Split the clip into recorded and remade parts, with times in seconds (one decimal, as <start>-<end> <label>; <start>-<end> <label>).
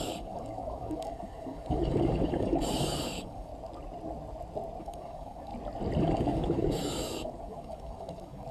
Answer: 0.0-3.5 remade; 3.5-4.8 recorded; 4.8-5.5 remade; 5.5-6.0 recorded; 6.0-8.5 remade